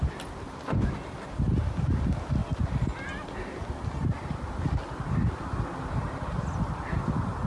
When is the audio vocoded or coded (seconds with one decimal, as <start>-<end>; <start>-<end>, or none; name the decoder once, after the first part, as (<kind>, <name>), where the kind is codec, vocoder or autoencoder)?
none